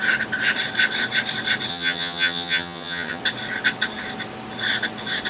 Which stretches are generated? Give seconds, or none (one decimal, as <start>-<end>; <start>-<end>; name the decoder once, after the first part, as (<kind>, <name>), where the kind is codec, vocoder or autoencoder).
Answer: 1.7-3.2 (vocoder, HiFi-GAN)